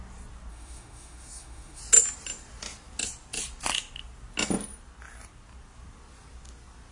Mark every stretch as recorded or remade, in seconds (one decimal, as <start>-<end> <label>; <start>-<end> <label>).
0.0-0.5 recorded; 0.5-1.8 remade; 1.8-6.9 recorded